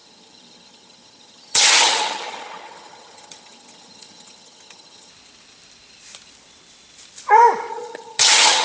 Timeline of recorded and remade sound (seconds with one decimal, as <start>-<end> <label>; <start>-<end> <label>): 0.0-5.1 remade; 5.1-7.7 recorded; 7.7-8.6 remade